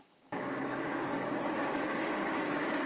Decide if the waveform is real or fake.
fake